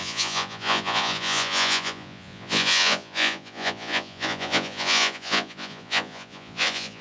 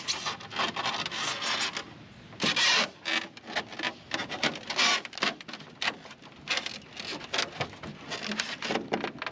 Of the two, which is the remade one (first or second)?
first